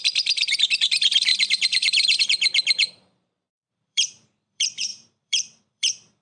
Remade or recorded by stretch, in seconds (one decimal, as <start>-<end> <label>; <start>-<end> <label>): 0.0-6.2 remade